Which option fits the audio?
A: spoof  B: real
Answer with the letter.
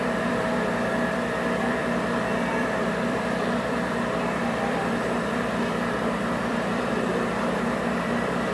A